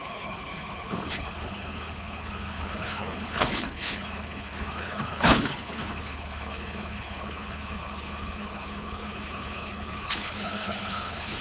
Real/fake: fake